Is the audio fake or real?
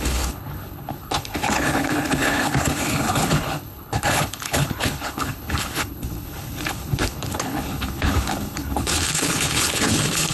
fake